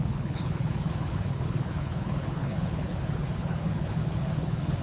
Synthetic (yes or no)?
yes